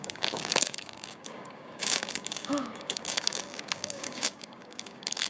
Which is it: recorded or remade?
remade